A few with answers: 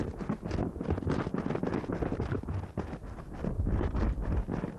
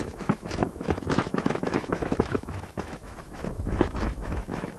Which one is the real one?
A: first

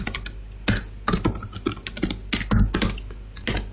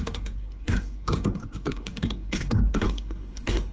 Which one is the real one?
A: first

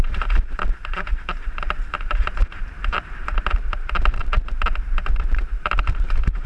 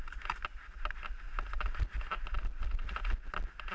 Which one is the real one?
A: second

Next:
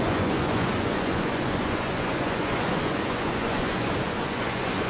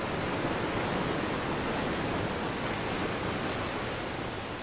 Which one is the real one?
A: second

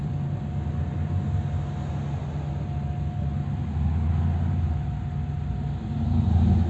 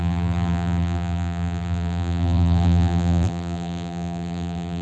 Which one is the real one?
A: first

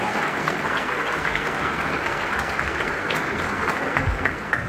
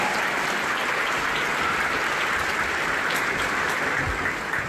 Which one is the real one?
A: second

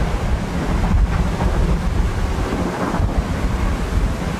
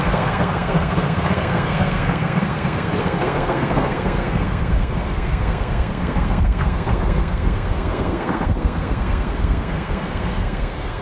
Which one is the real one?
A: first